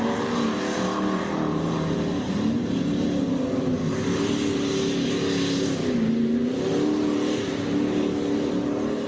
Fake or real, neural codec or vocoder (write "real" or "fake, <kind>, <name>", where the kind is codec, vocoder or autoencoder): real